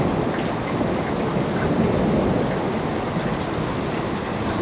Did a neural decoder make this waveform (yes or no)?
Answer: no